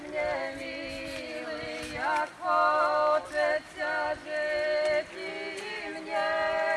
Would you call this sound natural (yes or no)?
yes